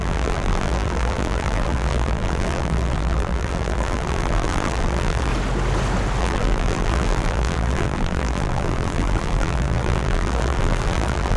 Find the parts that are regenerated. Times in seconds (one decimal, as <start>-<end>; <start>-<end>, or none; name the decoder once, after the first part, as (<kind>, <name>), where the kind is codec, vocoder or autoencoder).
0.0-5.3 (vocoder, BigVGAN v2); 6.2-11.4